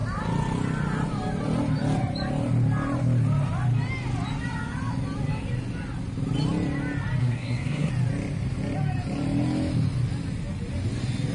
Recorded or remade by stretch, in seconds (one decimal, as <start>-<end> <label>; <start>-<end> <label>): 0.0-7.2 recorded; 7.2-7.9 remade; 7.9-11.3 recorded